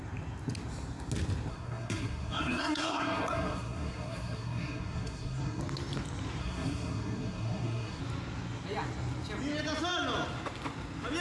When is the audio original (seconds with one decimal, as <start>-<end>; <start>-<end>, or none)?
0.0-1.5; 5.6-6.4; 8.0-11.2